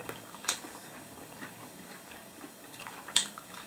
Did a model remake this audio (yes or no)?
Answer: yes